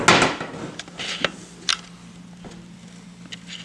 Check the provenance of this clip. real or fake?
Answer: real